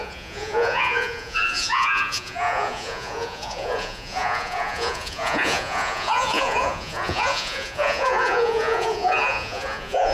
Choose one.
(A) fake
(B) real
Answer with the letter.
A